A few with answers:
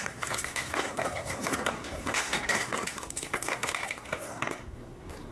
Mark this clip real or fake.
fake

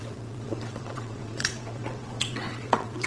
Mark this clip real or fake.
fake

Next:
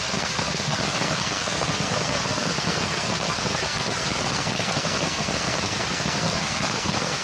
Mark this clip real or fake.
fake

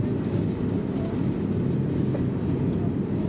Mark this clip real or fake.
real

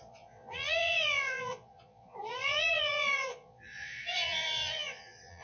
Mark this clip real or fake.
fake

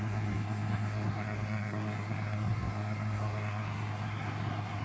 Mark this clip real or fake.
fake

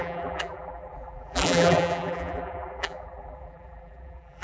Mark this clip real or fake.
fake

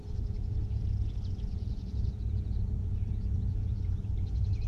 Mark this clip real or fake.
fake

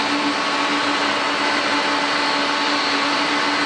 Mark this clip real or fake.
real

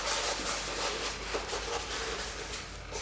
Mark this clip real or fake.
real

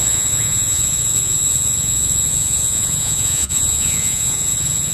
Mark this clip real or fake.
fake